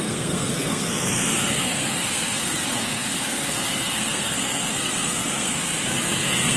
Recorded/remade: remade